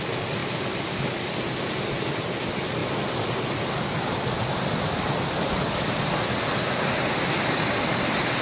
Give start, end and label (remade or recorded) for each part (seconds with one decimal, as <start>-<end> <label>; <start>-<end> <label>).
0.0-8.4 recorded